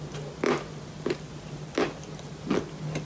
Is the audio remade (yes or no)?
no